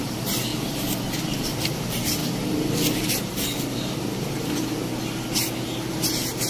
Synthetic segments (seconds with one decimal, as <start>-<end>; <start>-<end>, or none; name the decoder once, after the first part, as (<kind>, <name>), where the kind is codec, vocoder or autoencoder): 0.0-0.5 (vocoder, BigVGAN v2); 1.2-4.8; 5.9-6.5